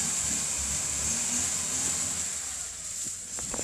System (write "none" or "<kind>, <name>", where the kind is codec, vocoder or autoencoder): none